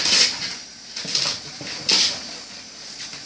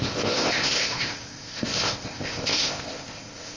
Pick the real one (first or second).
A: first